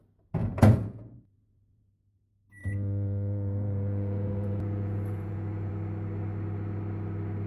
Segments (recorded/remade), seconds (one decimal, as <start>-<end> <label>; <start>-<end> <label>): 0.0-0.4 recorded; 0.4-1.9 remade; 1.9-2.6 recorded; 2.6-5.7 remade; 5.7-7.5 recorded